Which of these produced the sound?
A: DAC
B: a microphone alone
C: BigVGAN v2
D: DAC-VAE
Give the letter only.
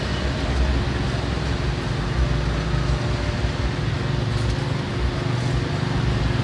B